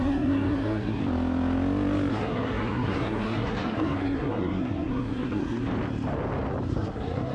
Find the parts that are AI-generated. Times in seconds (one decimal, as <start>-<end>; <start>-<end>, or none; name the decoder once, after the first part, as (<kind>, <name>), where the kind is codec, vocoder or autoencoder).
0.0-1.0 (codec, SNAC); 2.1-5.6; 6.7-7.3